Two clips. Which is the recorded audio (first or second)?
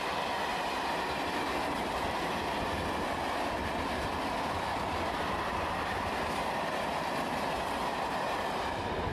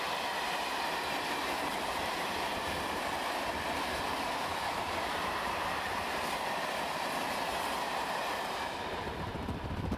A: first